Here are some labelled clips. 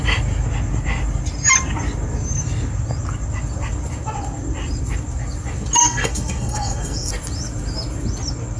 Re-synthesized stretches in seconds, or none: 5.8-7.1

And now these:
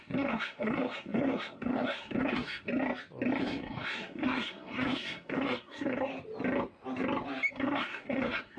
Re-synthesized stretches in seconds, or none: 0.0-2.7; 3.4-6.1; 7.5-8.6

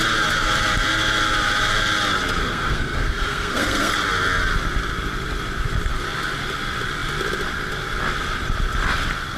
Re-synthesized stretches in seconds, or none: 2.4-3.9

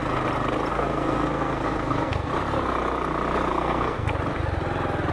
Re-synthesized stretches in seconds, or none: 0.7-2.3; 3.5-4.1

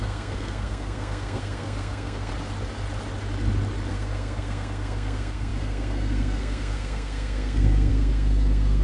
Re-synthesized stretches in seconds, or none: 0.0-2.3; 3.9-8.8

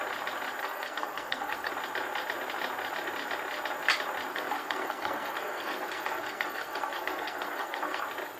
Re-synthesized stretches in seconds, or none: 0.6-1.7; 4.3-8.0

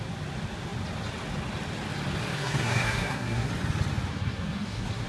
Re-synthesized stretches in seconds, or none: 2.3-3.5; 4.1-5.1

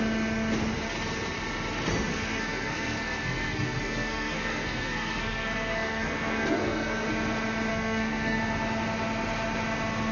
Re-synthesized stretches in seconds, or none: 2.1-7.1; 7.7-8.4